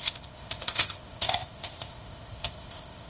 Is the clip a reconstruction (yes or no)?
yes